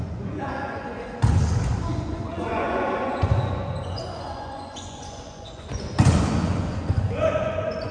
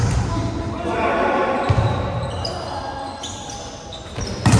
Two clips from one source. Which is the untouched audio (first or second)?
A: second